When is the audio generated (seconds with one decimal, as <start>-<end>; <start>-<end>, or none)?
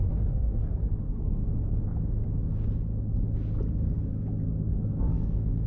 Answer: 0.0-1.4; 4.8-5.7